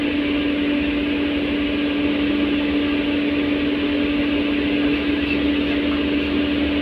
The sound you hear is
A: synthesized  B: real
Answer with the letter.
B